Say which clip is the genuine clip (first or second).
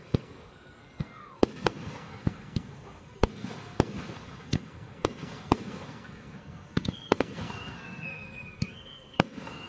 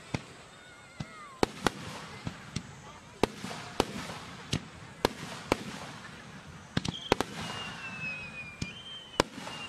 second